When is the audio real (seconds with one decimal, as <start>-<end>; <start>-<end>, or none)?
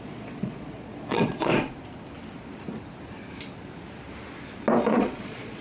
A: 1.5-4.9